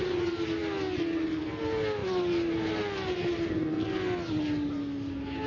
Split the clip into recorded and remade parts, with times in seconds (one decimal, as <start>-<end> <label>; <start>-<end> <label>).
0.0-5.5 recorded